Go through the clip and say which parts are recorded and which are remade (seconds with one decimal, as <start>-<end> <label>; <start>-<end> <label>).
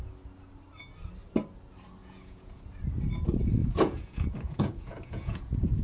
0.0-2.0 recorded; 2.0-2.6 remade; 2.6-3.6 recorded; 3.6-5.8 remade